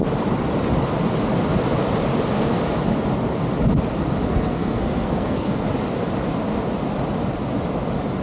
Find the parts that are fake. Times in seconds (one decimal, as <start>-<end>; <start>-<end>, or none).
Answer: 4.3-5.5